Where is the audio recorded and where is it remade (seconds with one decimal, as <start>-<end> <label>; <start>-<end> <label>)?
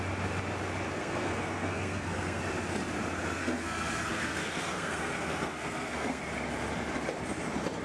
0.0-0.9 recorded; 0.9-2.4 remade; 2.4-3.4 recorded; 3.4-6.2 remade; 6.2-7.8 recorded